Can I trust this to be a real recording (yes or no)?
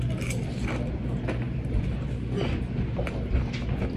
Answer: yes